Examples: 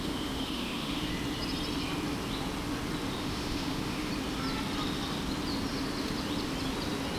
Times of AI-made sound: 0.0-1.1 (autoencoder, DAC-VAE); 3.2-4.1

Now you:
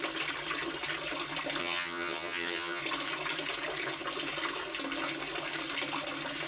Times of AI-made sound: 1.6-2.8 (vocoder, HiFi-GAN)

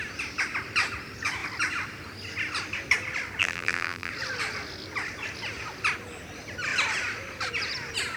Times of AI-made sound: 3.4-4.1 (vocoder, BigVGAN v2)

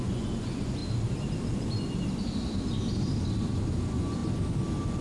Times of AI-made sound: 0.0-0.8 (vocoder, Vocos); 3.8-4.2